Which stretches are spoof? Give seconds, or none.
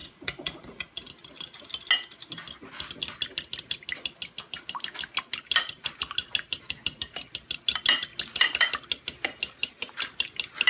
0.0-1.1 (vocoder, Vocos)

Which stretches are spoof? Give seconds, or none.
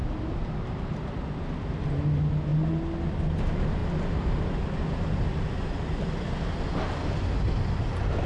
none